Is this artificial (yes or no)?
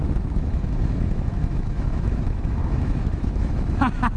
yes